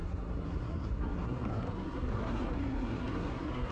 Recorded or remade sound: remade